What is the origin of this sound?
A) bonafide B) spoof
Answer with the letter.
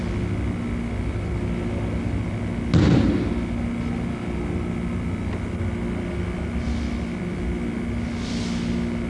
A